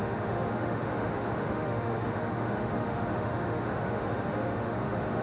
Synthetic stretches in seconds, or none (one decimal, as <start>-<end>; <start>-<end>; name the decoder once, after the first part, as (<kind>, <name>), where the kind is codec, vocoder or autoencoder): 0.0-5.2 (autoencoder, DAC-VAE)